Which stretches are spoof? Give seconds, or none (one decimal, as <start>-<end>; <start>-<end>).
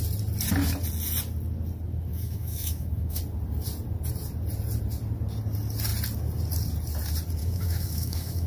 2.1-3.2; 7.4-8.5